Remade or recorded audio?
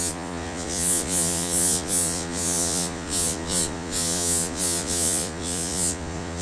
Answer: remade